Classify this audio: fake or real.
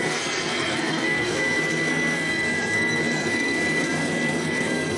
fake